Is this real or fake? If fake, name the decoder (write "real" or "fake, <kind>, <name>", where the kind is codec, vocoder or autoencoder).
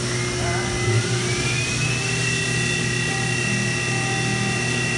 real